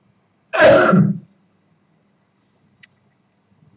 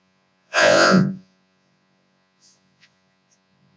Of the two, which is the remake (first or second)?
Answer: second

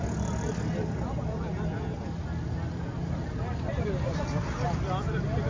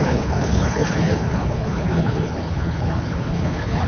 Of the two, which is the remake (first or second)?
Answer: second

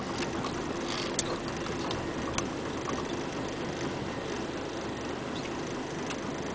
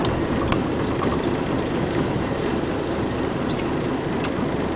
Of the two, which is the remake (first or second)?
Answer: second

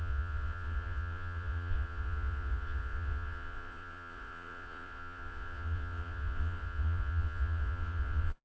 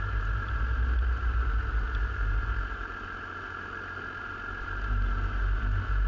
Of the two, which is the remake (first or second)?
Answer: first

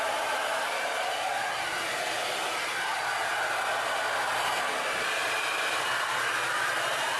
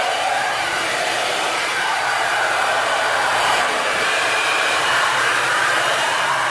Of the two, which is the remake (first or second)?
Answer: second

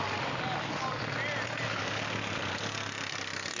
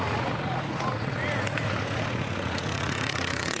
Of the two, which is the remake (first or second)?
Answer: second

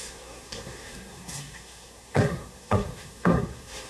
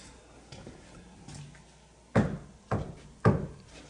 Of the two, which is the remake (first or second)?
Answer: first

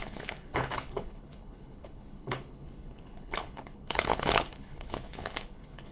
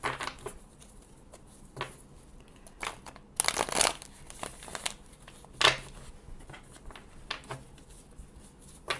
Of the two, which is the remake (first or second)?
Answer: first